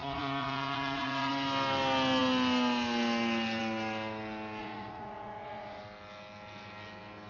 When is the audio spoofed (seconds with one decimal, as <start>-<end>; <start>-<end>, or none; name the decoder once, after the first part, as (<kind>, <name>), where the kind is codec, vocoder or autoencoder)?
0.0-1.3 (vocoder, Vocos); 4.6-5.8